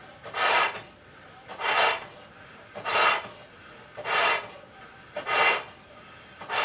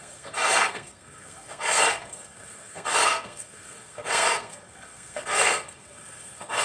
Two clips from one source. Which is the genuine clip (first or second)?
first